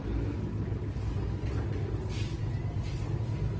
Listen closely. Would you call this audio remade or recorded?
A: recorded